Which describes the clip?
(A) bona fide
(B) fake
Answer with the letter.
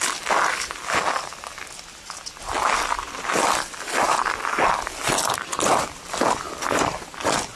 A